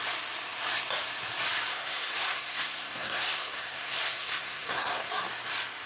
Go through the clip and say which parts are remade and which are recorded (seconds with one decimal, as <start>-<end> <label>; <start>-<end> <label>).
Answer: 0.0-1.7 recorded; 1.7-5.1 remade; 5.1-5.9 recorded